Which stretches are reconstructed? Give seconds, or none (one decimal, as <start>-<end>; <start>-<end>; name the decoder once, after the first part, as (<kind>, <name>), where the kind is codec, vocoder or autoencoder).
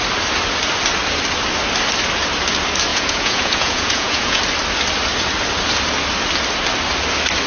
2.9-4.4 (vocoder, Vocos)